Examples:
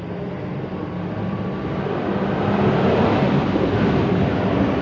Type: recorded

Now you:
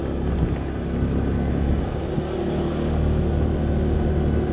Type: recorded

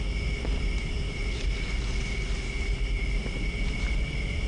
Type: recorded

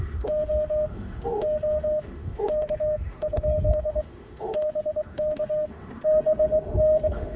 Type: remade